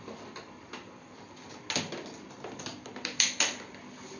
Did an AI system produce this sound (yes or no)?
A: no